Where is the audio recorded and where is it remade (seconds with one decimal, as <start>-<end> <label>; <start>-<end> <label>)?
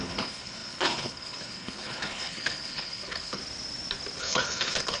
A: 0.0-3.4 remade; 3.4-4.2 recorded; 4.2-5.0 remade